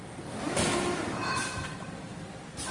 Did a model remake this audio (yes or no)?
no